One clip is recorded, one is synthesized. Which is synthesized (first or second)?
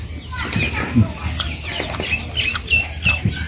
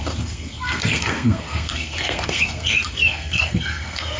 second